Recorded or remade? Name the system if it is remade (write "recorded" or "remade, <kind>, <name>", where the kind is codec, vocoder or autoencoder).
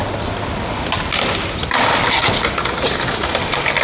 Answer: recorded